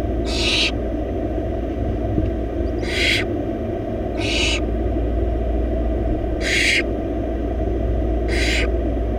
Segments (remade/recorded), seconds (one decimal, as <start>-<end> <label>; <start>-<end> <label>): 0.0-9.2 recorded